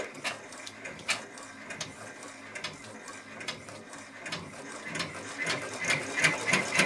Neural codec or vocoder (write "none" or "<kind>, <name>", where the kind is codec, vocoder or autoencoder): none